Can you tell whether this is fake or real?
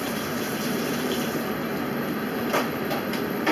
fake